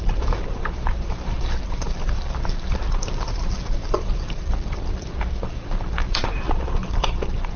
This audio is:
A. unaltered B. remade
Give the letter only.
B